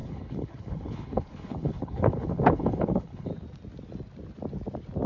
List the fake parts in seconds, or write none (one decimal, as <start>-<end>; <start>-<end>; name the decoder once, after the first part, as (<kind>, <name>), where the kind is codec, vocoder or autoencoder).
0.0-3.3 (codec, HILCodec)